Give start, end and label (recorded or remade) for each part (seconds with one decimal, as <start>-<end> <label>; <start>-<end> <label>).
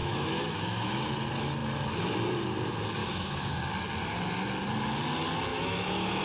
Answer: 0.0-0.9 remade; 0.9-3.0 recorded; 3.0-3.6 remade; 3.6-5.5 recorded; 5.5-6.2 remade